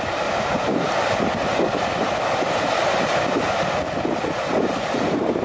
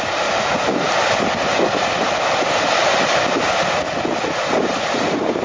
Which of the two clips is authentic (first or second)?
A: second